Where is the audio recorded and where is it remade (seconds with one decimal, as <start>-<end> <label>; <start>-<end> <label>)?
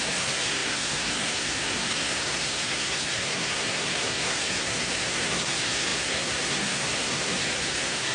0.0-8.1 remade